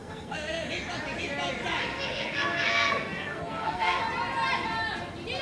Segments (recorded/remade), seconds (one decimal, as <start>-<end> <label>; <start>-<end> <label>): 0.0-0.7 remade; 0.7-1.8 recorded; 1.8-4.0 remade; 4.0-5.4 recorded